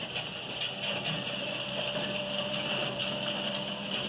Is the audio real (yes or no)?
yes